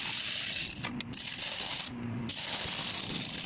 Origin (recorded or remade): recorded